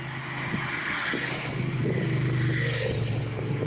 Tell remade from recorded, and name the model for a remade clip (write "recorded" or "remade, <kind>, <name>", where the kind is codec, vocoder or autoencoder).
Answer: recorded